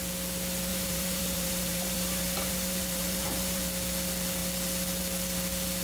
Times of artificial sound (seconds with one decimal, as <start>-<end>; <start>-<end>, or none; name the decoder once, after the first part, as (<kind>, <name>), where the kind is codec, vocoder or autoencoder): 0.7-3.6 (vocoder, BigVGAN v2)

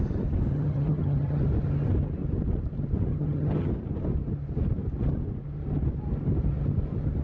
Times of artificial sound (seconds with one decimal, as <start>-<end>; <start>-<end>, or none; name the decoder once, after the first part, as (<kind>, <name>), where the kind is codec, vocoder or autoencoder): 0.5-1.4 (vocoder, HiFi-GAN); 3.1-3.7

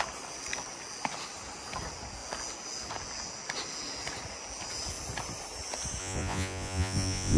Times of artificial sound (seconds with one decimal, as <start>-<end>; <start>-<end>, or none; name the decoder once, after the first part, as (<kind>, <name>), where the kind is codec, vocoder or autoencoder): 6.0-7.4 (vocoder, Vocos)

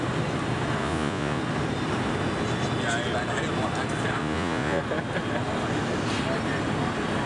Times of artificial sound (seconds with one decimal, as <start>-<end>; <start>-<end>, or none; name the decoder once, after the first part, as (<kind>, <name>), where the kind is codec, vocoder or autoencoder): 0.8-1.4 (vocoder, Vocos); 4.2-4.8

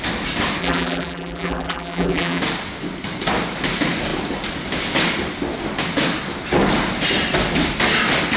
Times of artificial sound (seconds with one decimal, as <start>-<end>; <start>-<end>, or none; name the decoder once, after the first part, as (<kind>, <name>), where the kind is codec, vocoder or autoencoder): 0.6-2.4 (vocoder, BigVGAN v2)

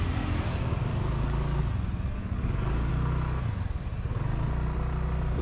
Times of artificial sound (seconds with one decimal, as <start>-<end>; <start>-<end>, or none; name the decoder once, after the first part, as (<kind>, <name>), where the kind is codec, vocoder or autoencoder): 0.9-1.6 (codec, DAC); 2.2-2.9